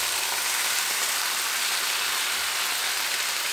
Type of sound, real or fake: real